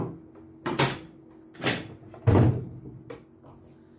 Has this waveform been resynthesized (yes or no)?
no